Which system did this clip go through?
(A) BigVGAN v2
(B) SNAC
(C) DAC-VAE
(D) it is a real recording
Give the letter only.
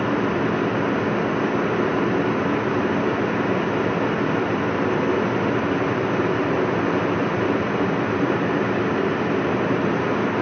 D